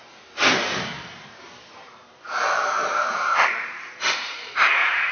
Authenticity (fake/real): fake